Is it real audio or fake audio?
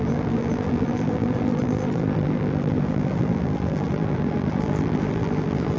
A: fake